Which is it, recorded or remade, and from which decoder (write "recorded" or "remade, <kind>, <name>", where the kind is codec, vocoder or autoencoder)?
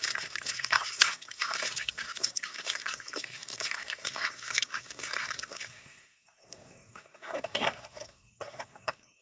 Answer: remade, codec, SNAC